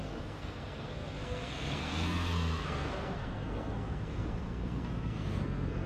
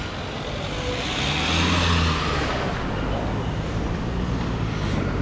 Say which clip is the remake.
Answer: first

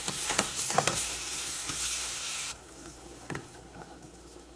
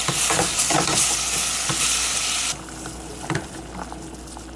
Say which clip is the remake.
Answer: first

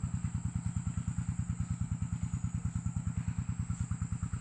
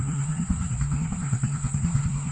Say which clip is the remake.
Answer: second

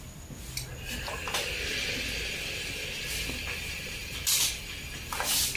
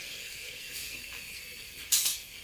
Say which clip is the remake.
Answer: second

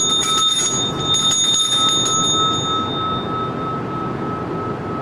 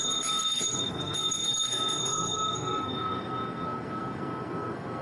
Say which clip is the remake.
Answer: second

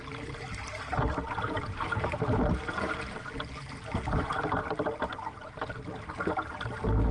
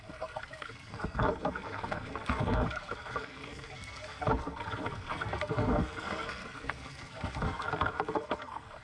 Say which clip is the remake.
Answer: second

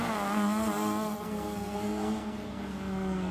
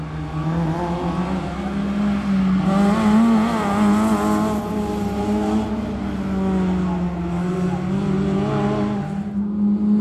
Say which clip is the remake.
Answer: first